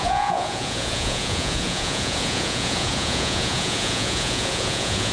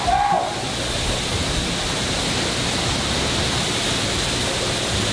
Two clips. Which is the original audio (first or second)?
second